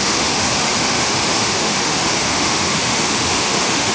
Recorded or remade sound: remade